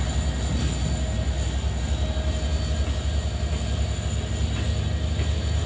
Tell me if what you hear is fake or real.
real